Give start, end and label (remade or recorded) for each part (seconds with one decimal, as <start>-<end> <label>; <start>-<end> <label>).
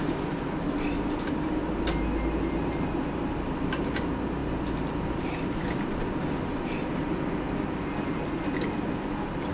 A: 0.0-9.5 recorded